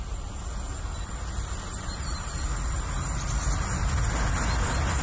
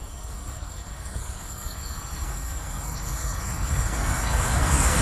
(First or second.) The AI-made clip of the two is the second